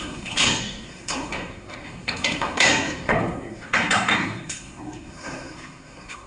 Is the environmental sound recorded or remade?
remade